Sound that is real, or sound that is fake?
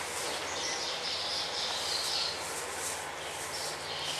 real